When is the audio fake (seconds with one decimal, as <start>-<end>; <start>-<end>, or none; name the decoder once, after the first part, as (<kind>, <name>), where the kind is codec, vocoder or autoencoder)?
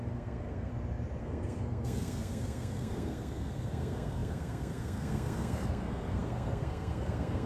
0.0-0.7 (codec, SNAC); 1.2-7.5